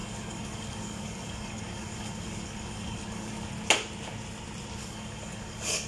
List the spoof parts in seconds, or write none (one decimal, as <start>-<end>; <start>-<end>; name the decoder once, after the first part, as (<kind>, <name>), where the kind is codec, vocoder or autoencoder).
0.0-3.5 (codec, DAC); 4.8-5.9